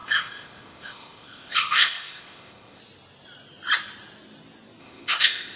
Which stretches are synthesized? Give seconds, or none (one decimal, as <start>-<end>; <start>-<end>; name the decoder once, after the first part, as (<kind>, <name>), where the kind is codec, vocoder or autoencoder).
0.0-2.8 (codec, ZipCodec); 4.8-5.6